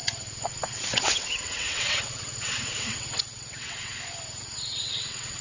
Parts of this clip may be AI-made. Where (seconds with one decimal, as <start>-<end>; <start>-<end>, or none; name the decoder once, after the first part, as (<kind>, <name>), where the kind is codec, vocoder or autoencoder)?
0.0-3.9 (vocoder, WaveNeXt); 4.4-5.4